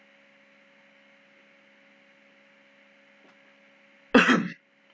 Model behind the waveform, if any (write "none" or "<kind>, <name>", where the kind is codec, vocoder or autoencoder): none